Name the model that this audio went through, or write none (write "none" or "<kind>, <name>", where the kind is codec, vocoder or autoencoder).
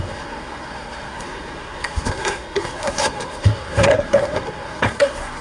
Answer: codec, SNAC